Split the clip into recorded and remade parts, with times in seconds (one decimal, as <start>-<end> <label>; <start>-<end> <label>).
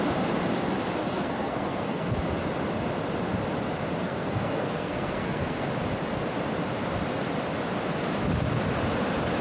0.0-1.0 recorded; 1.0-2.2 remade; 2.2-4.0 recorded; 4.0-5.7 remade; 5.7-9.4 recorded